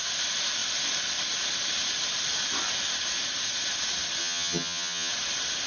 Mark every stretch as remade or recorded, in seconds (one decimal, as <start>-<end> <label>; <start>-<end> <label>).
0.0-4.2 recorded; 4.2-5.1 remade; 5.1-5.7 recorded